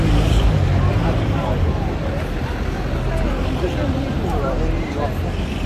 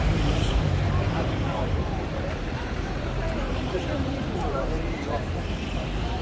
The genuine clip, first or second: first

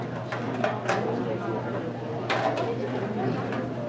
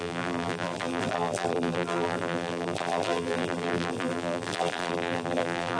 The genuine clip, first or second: first